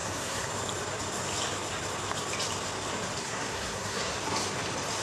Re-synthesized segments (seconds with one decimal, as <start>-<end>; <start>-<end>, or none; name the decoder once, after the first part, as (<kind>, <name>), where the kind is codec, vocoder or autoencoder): 0.0-0.5 (codec, SNAC); 3.2-4.1